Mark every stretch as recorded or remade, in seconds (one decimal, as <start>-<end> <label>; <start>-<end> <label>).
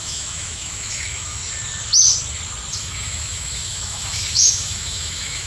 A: 0.0-1.4 remade; 1.4-2.7 recorded; 2.7-5.5 remade